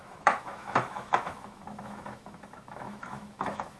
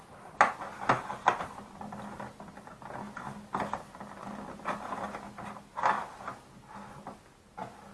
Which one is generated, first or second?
first